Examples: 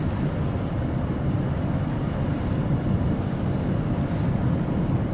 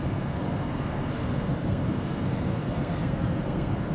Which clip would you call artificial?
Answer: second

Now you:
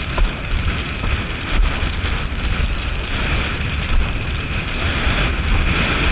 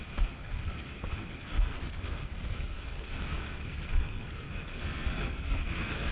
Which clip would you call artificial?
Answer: second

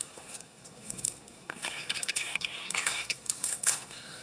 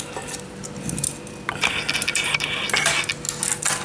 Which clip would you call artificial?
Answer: first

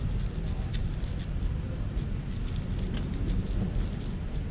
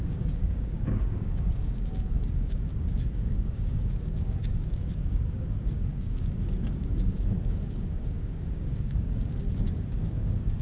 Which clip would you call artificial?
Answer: second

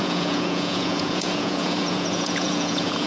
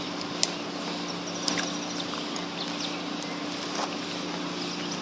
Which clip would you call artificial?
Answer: first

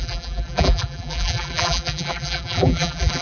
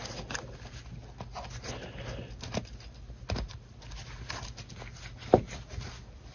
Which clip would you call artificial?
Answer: first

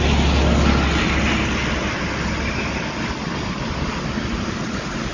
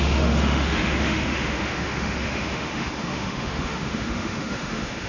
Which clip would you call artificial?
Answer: second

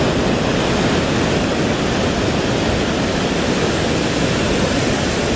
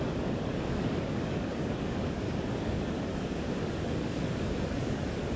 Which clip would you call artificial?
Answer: second